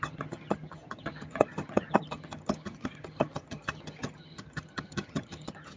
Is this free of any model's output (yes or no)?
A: no